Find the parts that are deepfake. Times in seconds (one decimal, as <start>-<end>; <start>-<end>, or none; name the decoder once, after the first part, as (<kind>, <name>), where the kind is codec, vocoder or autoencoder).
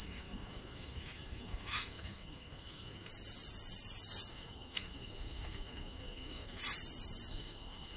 0.0-3.1 (codec, SNAC); 4.3-6.6; 7.3-8.0